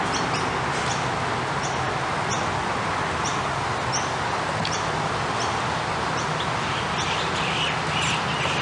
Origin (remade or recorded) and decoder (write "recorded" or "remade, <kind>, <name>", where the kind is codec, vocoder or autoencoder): recorded